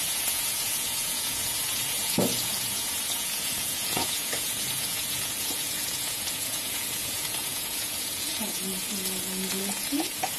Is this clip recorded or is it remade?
remade